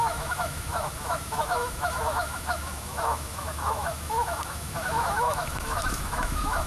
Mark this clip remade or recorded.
remade